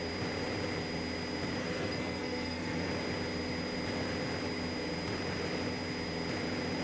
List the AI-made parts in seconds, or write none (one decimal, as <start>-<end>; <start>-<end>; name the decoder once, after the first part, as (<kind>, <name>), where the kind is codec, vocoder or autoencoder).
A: 1.6-2.9 (codec, SNAC)